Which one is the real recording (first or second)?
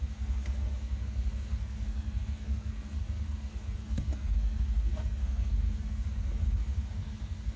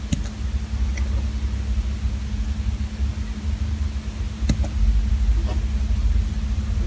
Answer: second